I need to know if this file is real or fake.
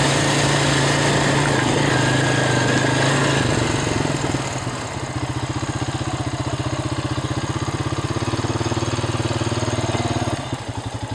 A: real